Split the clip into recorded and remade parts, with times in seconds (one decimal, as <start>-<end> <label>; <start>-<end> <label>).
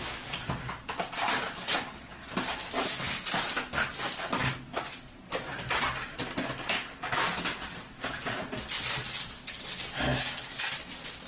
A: 0.0-11.3 recorded